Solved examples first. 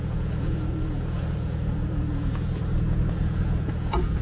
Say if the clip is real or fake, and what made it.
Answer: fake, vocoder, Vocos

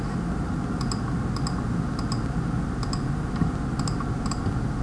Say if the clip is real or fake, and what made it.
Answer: real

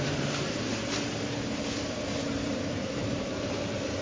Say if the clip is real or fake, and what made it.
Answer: fake, vocoder, BigVGAN v2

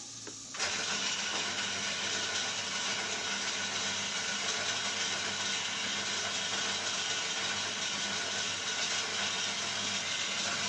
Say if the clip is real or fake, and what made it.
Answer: real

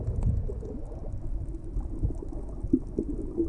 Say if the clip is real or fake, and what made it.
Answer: real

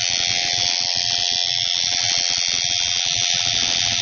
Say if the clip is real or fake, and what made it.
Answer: real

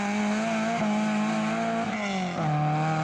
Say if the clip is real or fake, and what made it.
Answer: real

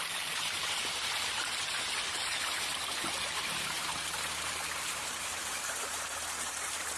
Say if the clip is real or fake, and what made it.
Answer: fake, vocoder, BigVGAN v2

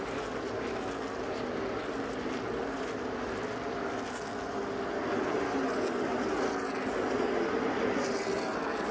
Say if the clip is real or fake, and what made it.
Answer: real